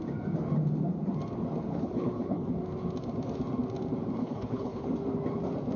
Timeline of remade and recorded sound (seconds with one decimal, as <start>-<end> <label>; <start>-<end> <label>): 0.0-1.7 recorded; 1.7-2.5 remade; 2.5-4.2 recorded; 4.2-4.9 remade; 4.9-5.8 recorded